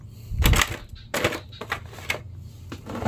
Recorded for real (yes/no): yes